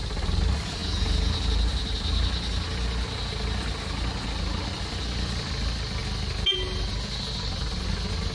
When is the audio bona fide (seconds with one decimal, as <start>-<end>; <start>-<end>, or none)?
0.0-8.3